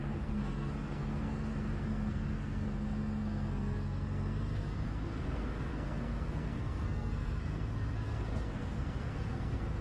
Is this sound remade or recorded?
remade